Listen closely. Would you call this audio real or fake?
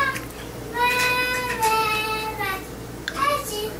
fake